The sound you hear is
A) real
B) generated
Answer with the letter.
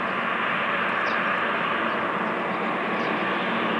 A